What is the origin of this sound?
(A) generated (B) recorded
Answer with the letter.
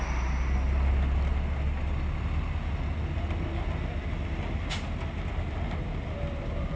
B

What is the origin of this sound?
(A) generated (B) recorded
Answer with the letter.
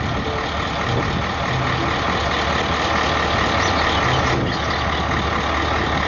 B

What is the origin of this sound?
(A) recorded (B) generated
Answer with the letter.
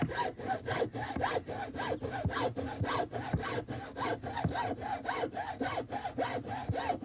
A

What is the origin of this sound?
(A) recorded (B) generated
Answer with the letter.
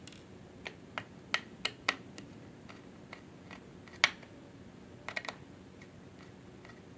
A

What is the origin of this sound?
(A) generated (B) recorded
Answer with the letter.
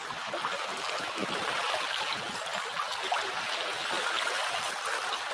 B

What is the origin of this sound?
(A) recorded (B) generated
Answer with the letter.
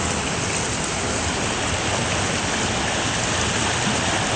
A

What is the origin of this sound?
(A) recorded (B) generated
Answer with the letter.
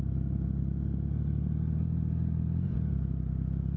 A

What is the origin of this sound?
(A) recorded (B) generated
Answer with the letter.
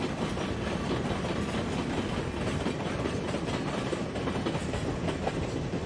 A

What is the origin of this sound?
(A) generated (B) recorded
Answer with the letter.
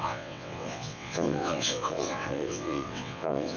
A